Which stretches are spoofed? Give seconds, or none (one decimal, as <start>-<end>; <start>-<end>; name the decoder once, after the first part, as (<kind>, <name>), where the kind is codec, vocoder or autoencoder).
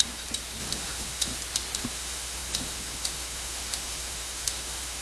0.6-1.3 (autoencoder, DAC-VAE); 1.9-5.0